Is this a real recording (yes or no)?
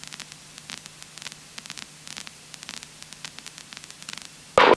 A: yes